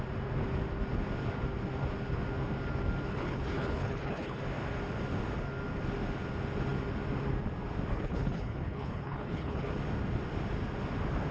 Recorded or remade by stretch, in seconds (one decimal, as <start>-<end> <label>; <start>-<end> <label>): 0.0-3.1 recorded; 3.1-4.4 remade; 4.4-7.9 recorded; 7.9-9.7 remade; 9.7-11.3 recorded